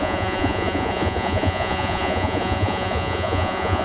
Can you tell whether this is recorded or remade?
remade